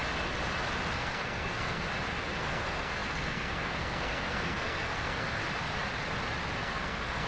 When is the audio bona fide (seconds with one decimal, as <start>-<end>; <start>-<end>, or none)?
0.0-0.9; 1.9-2.4; 5.4-6.6